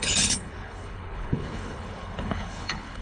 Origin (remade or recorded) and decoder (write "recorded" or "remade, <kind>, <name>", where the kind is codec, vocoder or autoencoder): remade, codec, HILCodec